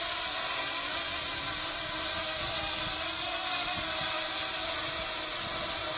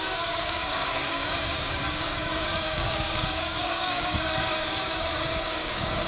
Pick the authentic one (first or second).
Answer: first